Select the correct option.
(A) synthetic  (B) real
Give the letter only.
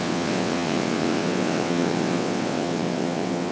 A